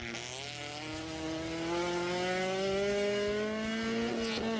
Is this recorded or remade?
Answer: recorded